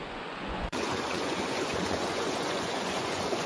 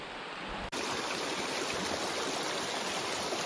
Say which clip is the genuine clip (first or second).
second